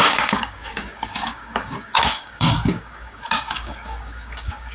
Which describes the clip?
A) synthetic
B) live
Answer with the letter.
A